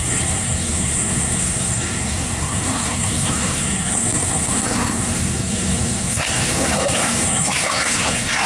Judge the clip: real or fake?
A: fake